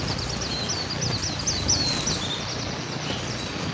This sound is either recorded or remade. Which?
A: recorded